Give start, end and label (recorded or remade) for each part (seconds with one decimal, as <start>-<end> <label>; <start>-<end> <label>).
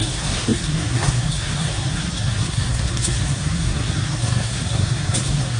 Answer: 0.0-5.6 remade